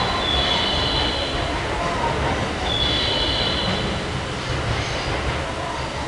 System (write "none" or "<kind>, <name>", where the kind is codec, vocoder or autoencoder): none